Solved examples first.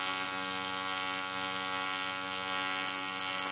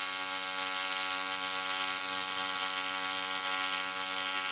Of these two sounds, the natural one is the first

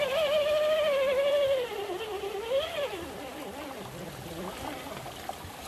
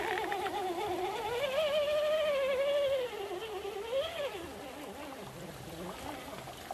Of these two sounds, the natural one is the second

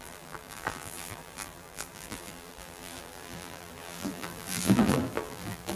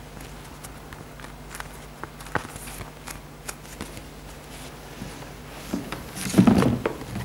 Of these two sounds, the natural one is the second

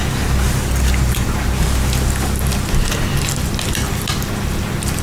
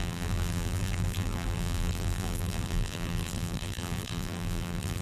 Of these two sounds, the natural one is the first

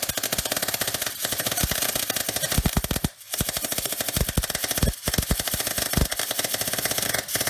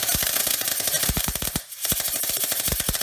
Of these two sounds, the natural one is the first